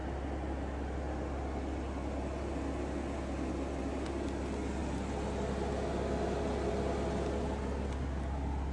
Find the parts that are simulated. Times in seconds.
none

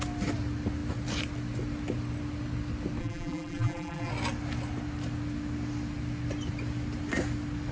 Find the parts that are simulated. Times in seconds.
3.0-4.1 (vocoder, BigVGAN v2)

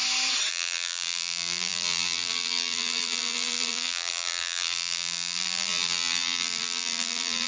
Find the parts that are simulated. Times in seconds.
0.5-7.5 (vocoder, BigVGAN v2)

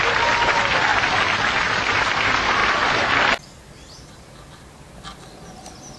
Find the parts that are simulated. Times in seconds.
0.0-0.9 (vocoder, BigVGAN v2); 1.7-6.0

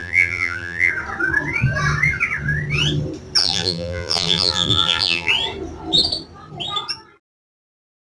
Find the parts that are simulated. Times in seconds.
0.0-0.9 (vocoder, BigVGAN v2); 3.4-5.3

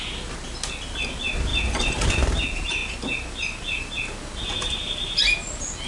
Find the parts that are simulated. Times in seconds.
none

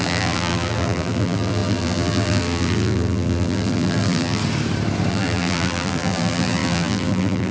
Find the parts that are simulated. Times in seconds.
0.0-4.4 (vocoder, BigVGAN v2); 5.1-7.5